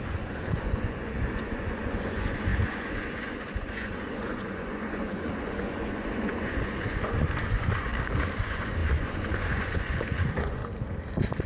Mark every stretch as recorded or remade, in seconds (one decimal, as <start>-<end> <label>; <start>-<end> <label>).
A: 0.0-7.9 remade; 7.9-8.4 recorded; 8.4-10.6 remade; 10.6-11.5 recorded